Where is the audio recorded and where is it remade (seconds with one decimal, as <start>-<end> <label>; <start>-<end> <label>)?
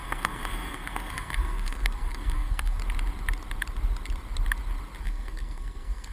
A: 0.0-2.8 remade; 2.8-5.0 recorded; 5.0-6.1 remade